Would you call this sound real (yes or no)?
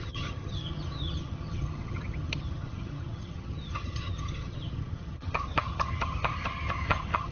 no